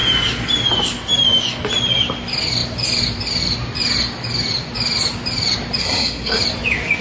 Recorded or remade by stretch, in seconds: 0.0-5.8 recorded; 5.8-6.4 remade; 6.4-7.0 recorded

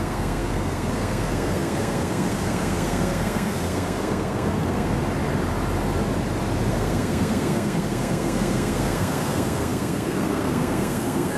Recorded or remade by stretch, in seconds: 0.0-5.0 remade; 5.0-6.7 recorded; 6.7-11.4 remade

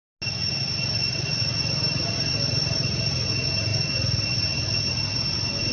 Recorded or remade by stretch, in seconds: 0.0-5.7 recorded

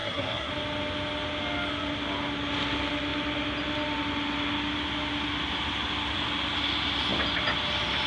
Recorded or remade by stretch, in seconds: 0.0-0.5 remade; 0.5-8.1 recorded

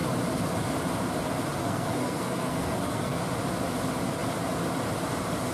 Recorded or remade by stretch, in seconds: 0.0-1.6 recorded; 1.6-3.2 remade; 3.2-5.5 recorded

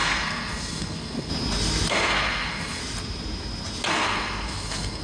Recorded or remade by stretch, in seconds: 0.0-1.3 remade; 1.3-1.9 recorded; 1.9-2.8 remade; 2.8-3.9 recorded; 3.9-5.0 remade

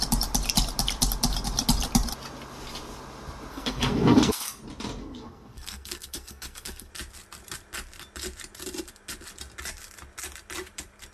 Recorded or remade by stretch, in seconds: 0.0-3.5 recorded; 3.5-4.6 remade; 4.6-5.0 recorded; 5.0-6.9 remade; 6.9-11.1 recorded